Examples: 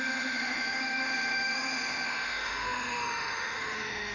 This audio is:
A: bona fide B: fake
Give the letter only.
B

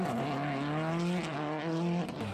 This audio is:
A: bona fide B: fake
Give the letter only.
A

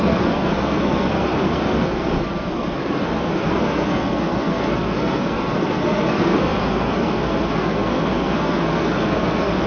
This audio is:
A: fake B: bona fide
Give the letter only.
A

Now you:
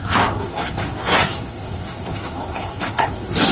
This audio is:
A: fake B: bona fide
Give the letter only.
A